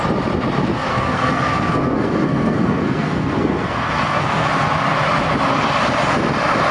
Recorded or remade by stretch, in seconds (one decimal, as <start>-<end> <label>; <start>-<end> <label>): 0.0-0.9 recorded; 0.9-4.5 remade; 4.5-6.7 recorded